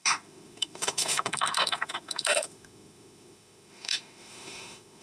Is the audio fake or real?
fake